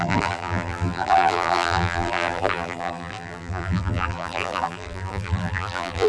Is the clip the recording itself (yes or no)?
no